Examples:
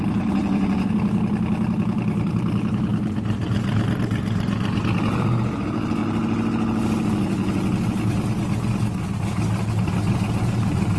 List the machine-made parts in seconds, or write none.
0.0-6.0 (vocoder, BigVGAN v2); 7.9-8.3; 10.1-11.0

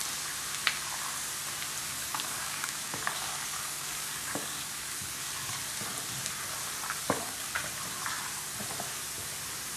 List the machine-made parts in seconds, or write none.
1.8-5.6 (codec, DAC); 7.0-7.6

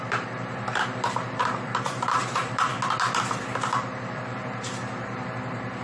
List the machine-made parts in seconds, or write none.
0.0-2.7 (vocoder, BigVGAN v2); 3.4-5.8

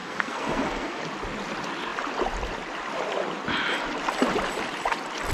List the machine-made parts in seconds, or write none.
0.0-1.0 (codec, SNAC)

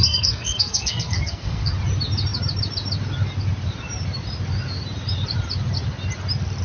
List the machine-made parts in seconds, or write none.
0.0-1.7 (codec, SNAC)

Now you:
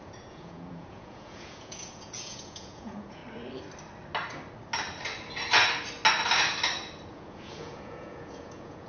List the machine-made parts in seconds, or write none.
0.0-3.2 (vocoder, Vocos); 7.1-8.9